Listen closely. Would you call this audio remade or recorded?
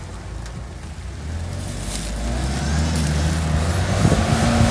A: recorded